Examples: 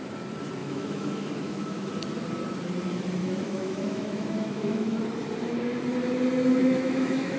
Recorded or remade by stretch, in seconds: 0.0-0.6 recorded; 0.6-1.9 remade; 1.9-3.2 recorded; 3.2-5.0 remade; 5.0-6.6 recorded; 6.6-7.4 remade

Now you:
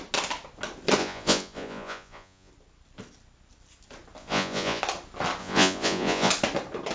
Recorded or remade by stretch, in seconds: 0.0-1.0 recorded; 1.0-2.5 remade; 2.5-4.2 recorded; 4.2-4.8 remade; 4.8-5.4 recorded; 5.4-6.3 remade; 6.3-6.9 recorded

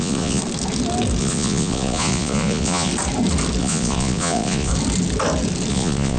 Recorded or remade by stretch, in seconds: 0.0-0.4 remade; 0.4-1.2 recorded; 1.2-2.9 remade; 2.9-3.6 recorded; 3.6-4.7 remade; 4.7-5.7 recorded; 5.7-6.2 remade

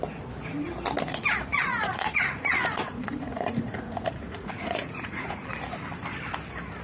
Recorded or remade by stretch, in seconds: 0.0-1.5 recorded; 1.5-5.4 remade; 5.4-6.8 recorded